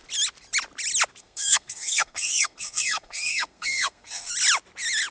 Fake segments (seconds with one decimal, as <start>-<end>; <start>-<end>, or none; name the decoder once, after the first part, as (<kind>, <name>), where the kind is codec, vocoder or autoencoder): 1.2-4.3 (codec, SNAC)